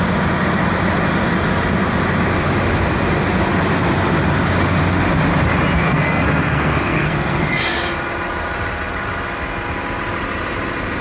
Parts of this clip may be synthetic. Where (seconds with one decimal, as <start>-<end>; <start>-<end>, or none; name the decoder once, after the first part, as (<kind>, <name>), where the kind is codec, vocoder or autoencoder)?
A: 5.8-7.4 (codec, SNAC)